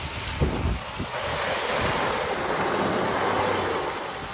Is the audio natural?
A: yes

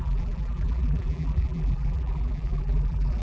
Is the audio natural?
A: no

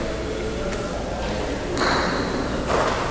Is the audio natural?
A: yes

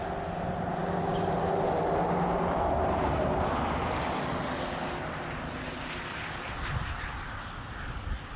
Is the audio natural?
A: yes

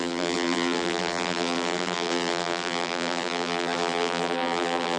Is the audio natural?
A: no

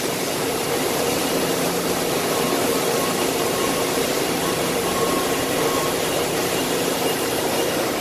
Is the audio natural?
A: no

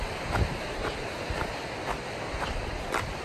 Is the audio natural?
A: yes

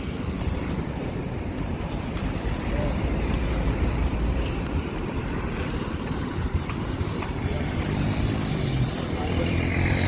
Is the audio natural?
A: no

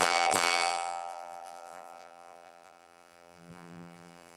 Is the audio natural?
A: no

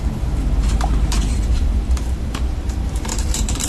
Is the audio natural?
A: no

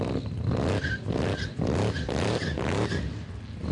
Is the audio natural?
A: no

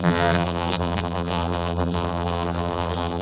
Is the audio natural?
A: no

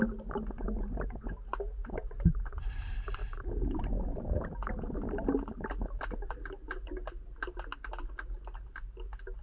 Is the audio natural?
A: yes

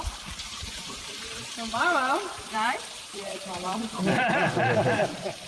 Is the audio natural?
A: no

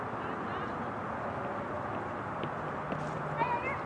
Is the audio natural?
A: yes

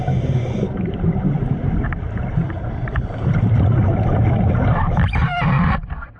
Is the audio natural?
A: no